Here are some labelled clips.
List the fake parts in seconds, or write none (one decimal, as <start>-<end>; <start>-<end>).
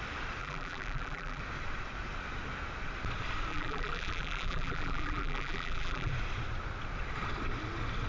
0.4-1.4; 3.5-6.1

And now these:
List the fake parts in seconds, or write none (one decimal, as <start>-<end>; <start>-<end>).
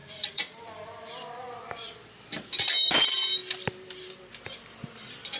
0.0-2.1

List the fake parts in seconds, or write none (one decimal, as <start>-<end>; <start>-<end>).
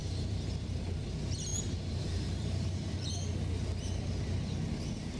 0.0-1.1; 1.5-3.1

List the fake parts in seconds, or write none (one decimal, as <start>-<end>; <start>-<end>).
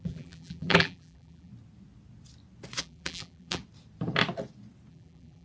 0.0-1.5; 2.8-3.6; 4.9-5.4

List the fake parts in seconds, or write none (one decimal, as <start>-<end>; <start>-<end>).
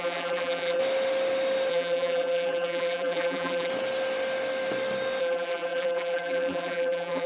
0.0-0.8; 1.7-3.7; 5.2-7.3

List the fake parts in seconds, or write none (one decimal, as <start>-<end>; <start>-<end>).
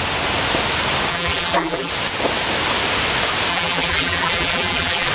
1.1-1.9; 3.5-5.1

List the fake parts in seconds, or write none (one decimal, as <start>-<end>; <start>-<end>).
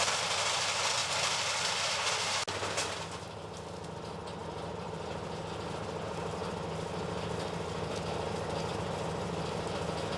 1.0-2.1; 4.4-5.4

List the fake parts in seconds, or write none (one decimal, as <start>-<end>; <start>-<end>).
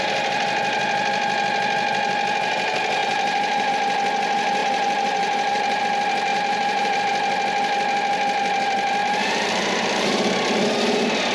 3.0-3.7; 4.6-5.8; 6.3-7.0; 9.0-10.1